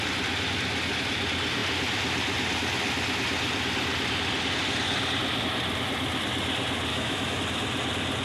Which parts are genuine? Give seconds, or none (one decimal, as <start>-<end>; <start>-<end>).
0.0-6.9; 7.4-8.2